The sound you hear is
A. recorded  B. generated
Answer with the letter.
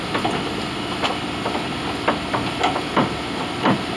A